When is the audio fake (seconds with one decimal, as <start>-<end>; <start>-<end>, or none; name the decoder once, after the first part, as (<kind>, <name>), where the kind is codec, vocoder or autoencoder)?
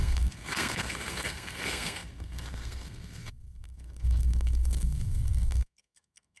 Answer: 0.0-6.4 (codec, SNAC)